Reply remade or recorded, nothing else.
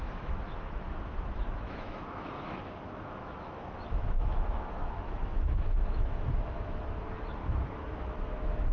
remade